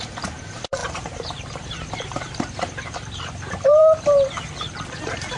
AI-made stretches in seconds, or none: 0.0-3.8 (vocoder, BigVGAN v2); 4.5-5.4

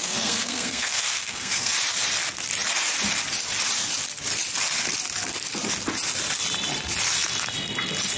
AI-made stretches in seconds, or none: 0.0-1.7 (codec, SNAC)